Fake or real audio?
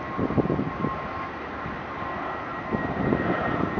real